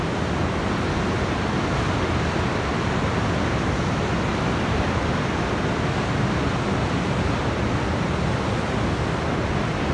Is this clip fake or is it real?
real